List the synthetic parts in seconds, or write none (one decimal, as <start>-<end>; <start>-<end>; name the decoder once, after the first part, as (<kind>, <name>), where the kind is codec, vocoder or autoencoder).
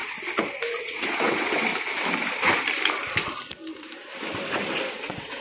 0.8-1.7 (vocoder, WaveNeXt); 4.9-5.4